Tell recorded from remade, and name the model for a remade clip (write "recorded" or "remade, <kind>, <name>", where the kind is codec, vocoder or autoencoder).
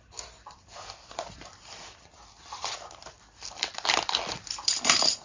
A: remade, vocoder, BigVGAN v2